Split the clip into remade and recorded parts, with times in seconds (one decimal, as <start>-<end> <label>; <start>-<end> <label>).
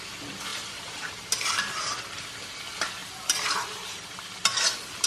0.0-0.5 recorded; 0.5-1.1 remade; 1.1-5.1 recorded